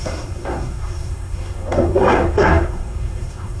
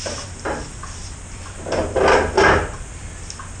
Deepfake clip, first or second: first